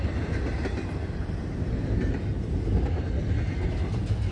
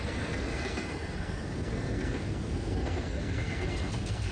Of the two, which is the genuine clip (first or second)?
first